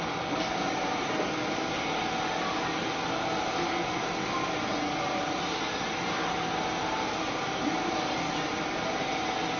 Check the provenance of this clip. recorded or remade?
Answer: recorded